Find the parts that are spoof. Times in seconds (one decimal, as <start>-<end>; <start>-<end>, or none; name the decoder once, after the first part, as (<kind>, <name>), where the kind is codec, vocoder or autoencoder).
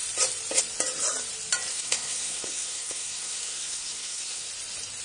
1.7-4.5 (codec, SNAC)